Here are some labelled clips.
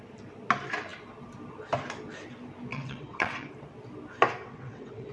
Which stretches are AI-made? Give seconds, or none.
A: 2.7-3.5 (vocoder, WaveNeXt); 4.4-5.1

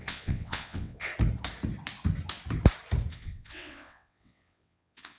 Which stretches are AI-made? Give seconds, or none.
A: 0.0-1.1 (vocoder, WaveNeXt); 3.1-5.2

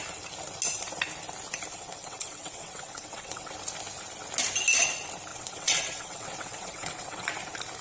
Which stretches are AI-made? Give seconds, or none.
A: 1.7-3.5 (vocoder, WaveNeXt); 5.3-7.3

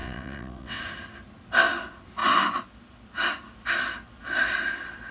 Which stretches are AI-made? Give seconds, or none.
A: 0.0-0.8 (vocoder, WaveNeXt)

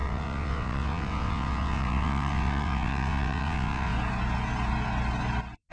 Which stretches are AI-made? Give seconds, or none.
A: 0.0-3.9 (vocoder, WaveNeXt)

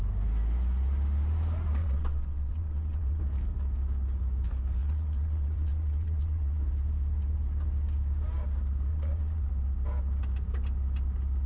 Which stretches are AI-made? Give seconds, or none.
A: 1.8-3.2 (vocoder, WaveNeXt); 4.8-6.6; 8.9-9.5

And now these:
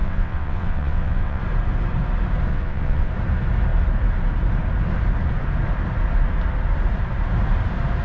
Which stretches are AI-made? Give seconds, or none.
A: 0.0-1.4 (vocoder, WaveNeXt); 2.5-3.1

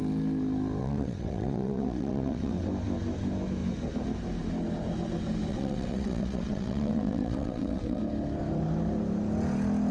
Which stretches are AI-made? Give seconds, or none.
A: 0.8-2.7 (vocoder, WaveNeXt); 5.5-8.0